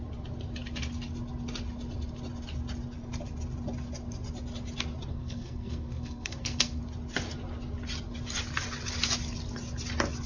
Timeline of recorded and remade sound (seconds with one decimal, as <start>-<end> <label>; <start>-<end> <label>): 0.0-5.1 recorded; 5.1-6.8 remade; 6.8-10.3 recorded